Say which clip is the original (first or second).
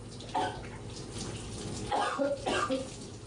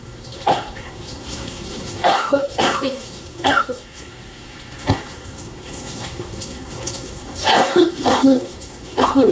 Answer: first